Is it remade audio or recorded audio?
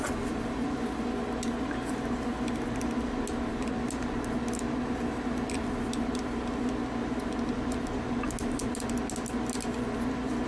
recorded